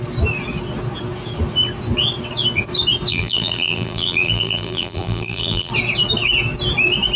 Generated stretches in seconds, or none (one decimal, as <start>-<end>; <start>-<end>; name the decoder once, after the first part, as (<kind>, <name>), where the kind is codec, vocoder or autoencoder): 3.1-5.7 (vocoder, BigVGAN v2)